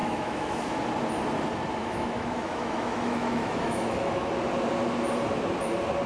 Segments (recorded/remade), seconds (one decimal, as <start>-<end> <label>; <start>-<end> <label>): 0.0-0.8 remade; 0.8-1.8 recorded; 1.8-4.3 remade; 4.3-6.1 recorded